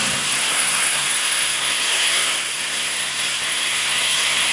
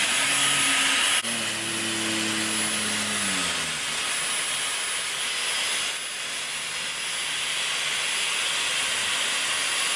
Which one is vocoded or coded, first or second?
first